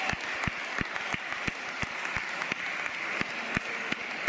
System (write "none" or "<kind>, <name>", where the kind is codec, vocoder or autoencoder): none